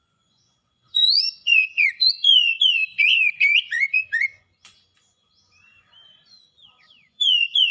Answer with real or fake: fake